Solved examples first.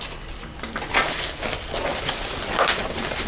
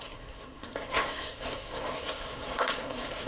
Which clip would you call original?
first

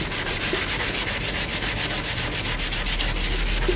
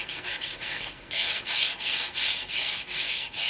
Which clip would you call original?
first